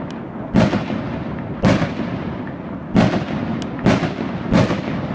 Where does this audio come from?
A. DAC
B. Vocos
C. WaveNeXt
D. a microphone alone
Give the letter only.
D